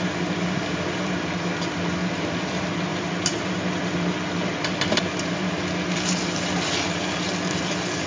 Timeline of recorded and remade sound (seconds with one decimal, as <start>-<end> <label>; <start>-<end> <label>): 0.0-2.9 recorded; 2.9-3.6 remade; 3.6-8.1 recorded